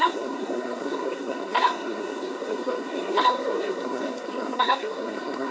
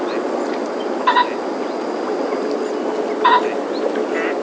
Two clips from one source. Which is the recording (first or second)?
second